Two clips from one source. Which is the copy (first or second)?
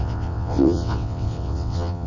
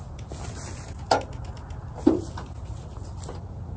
first